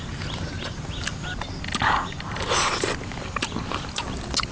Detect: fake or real real